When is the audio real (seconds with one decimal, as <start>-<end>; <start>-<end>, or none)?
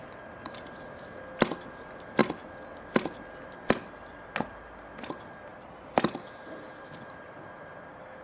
0.0-8.2